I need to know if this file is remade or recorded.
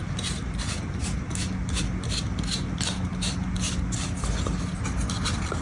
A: recorded